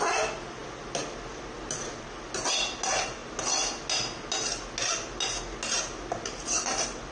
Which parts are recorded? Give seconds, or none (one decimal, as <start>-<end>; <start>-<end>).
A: 0.0-7.1